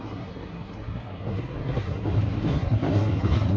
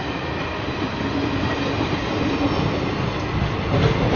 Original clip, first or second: second